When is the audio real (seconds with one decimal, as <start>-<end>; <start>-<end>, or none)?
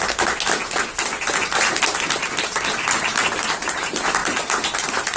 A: none